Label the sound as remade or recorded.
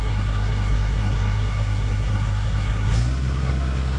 remade